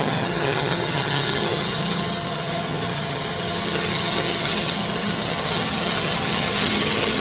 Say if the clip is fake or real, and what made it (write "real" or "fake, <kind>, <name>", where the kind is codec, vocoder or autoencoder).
fake, vocoder, HiFi-GAN